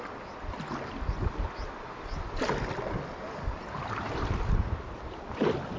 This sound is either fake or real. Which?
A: real